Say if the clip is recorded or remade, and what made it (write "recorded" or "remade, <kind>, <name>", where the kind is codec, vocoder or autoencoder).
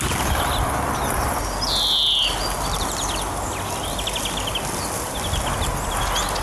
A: recorded